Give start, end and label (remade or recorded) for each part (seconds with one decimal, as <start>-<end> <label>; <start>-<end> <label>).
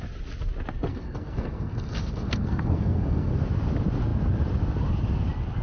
0.0-0.9 recorded; 0.9-3.3 remade; 3.3-5.6 recorded